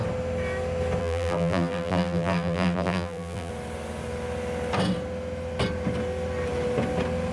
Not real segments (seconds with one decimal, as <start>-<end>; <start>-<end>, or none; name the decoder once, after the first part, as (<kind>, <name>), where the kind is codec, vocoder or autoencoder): 1.0-3.5 (vocoder, BigVGAN v2)